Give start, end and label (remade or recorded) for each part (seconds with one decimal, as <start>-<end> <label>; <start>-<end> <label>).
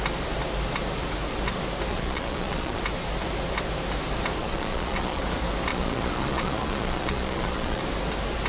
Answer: 0.0-1.9 recorded; 1.9-2.8 remade; 2.8-4.4 recorded; 4.4-5.2 remade; 5.2-5.7 recorded; 5.7-7.8 remade; 7.8-8.5 recorded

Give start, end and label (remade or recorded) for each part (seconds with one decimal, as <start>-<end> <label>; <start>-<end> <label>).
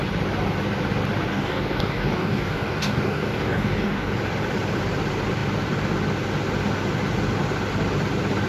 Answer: 0.0-1.3 recorded; 1.3-4.1 remade; 4.1-8.5 recorded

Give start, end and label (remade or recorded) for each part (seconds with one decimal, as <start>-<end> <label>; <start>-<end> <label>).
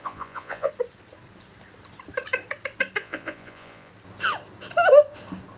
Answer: 0.0-0.7 remade; 0.7-3.0 recorded; 3.0-3.9 remade; 3.9-5.6 recorded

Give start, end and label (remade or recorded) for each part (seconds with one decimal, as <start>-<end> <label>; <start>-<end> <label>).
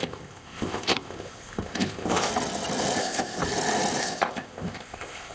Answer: 0.0-2.3 remade; 2.3-3.0 recorded; 3.0-3.4 remade; 3.4-4.0 recorded; 4.0-5.3 remade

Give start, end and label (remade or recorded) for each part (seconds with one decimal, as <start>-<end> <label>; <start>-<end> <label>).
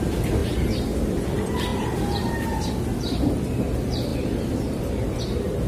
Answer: 0.0-0.4 recorded; 0.4-1.0 remade; 1.0-1.7 recorded; 1.7-2.3 remade; 2.3-4.1 recorded; 4.1-5.2 remade; 5.2-5.7 recorded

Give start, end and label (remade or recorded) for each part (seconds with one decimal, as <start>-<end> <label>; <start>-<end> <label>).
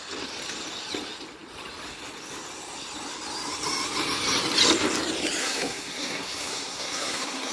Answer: 0.0-5.4 recorded; 5.4-7.5 remade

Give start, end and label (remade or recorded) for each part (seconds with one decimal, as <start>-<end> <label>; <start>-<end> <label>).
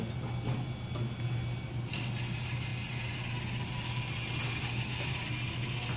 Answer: 0.0-6.0 recorded